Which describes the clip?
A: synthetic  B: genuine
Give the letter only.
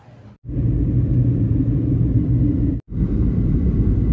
B